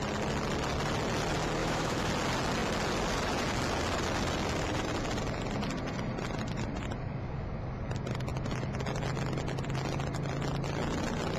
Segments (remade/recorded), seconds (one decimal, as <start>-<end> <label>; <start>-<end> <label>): 0.0-1.6 recorded; 1.6-2.1 remade; 2.1-11.4 recorded